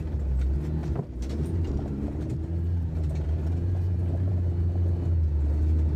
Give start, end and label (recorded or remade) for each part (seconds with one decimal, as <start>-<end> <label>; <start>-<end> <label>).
0.0-0.8 recorded; 0.8-4.3 remade; 4.3-6.0 recorded